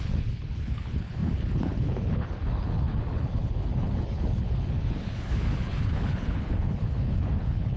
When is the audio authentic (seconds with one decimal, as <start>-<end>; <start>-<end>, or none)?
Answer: none